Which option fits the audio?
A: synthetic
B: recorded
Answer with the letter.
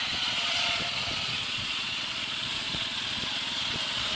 A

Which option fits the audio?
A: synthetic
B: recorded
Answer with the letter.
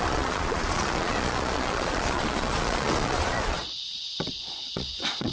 A